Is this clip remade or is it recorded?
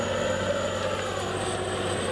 recorded